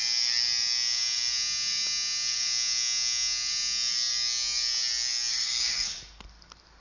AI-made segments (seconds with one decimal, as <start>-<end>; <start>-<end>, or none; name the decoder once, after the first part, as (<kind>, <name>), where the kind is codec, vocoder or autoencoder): 5.3-6.0 (codec, DAC)